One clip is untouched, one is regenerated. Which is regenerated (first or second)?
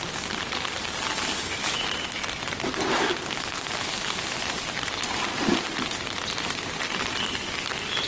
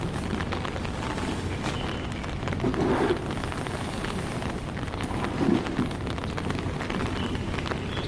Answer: first